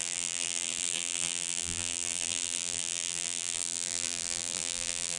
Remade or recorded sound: remade